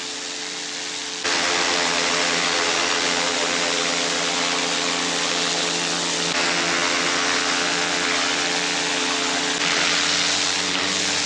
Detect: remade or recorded recorded